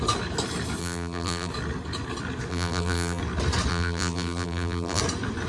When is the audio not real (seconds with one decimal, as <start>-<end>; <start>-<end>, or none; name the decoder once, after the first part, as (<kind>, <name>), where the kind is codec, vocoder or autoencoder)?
0.8-1.5 (vocoder, BigVGAN v2); 2.5-3.2; 3.7-5.0